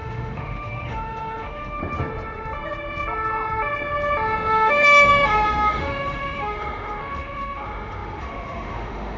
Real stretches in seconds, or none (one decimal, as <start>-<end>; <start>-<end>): 1.8-4.5